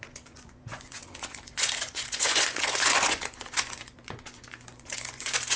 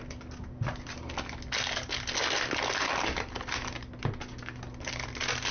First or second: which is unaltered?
second